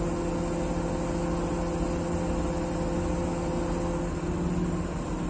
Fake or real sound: real